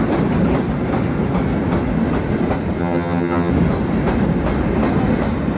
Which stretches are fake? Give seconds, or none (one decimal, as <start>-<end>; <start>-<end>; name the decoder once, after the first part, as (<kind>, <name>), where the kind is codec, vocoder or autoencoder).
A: 2.8-3.5 (vocoder, HiFi-GAN)